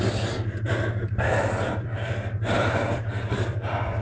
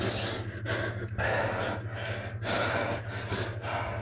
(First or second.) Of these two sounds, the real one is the second